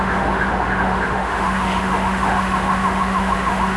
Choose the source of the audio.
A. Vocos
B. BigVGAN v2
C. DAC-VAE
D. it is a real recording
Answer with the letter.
C